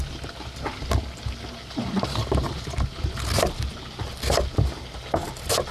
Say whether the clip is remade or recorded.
recorded